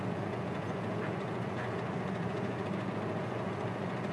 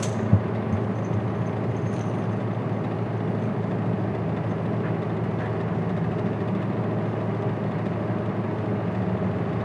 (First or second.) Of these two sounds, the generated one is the first